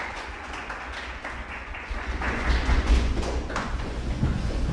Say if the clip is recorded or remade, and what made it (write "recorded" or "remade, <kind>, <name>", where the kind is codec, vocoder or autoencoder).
remade, vocoder, Vocos